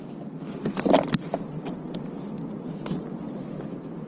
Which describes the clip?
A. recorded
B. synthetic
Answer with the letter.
A